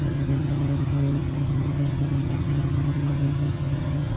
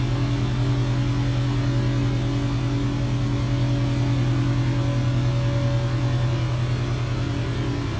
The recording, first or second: second